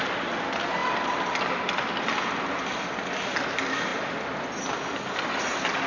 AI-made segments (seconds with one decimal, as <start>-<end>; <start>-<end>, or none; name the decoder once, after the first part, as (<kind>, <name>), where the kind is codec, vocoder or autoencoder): none

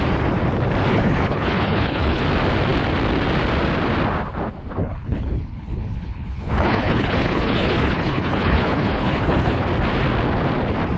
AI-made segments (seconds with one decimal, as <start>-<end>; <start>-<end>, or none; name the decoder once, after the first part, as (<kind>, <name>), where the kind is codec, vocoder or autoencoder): 0.9-2.2 (codec, HILCodec); 4.8-9.6

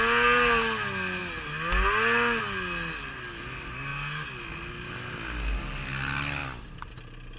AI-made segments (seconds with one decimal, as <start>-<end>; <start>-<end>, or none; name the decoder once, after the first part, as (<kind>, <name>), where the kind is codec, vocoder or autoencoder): none

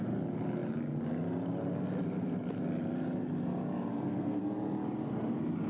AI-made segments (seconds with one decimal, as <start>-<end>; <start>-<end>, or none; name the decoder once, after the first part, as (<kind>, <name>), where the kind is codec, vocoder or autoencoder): 3.9-4.4 (codec, SNAC)

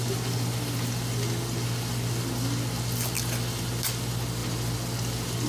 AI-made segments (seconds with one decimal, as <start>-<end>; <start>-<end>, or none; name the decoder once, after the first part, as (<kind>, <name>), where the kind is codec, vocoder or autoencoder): none

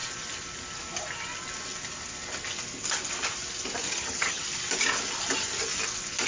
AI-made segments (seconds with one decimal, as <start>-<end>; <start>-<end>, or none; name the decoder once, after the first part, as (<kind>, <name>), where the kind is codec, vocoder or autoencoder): 3.8-4.4 (vocoder, HiFi-GAN)

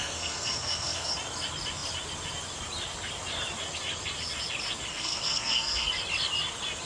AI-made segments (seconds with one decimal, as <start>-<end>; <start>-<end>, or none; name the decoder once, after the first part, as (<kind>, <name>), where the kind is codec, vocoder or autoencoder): 0.0-1.1 (codec, SNAC); 4.9-5.9

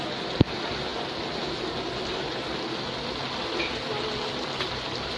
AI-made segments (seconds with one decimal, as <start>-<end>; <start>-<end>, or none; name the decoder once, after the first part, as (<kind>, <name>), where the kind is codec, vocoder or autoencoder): none